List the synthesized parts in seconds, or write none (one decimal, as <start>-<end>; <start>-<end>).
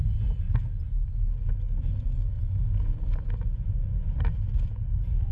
3.2-5.3